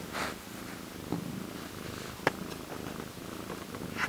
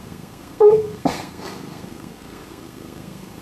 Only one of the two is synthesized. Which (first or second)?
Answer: second